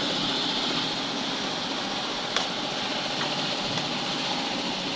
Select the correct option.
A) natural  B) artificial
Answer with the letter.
A